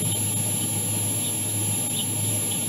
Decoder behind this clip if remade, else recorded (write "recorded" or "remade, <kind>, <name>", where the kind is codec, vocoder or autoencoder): recorded